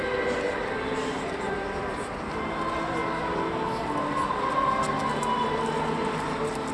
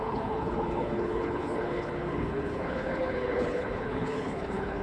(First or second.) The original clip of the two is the first